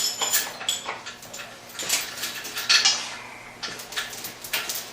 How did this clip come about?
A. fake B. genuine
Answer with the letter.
B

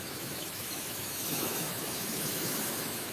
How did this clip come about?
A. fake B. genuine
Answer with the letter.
A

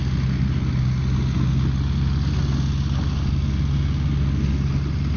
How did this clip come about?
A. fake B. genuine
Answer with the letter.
B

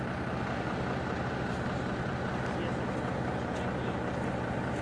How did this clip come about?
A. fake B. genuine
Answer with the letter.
B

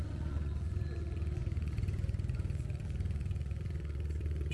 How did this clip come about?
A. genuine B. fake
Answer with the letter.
B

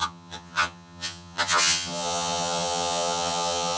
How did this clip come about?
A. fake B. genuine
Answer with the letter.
A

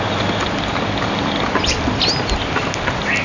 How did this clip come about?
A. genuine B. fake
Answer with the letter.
A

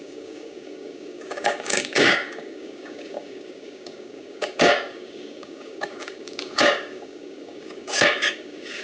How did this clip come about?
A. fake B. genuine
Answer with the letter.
A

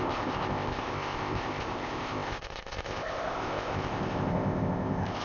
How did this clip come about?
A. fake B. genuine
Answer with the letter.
A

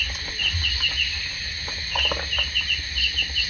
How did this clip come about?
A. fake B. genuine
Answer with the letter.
B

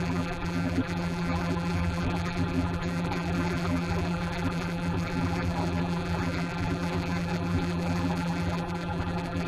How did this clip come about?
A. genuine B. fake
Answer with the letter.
B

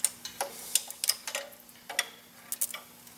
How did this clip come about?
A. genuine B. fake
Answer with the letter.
A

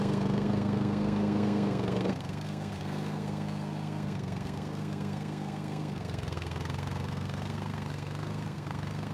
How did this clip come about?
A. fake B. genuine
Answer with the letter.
A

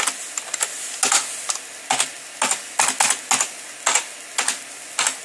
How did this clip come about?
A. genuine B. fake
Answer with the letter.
A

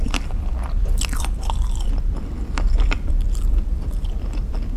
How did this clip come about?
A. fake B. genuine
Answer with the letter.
A